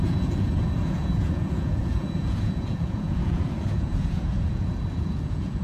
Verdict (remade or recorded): remade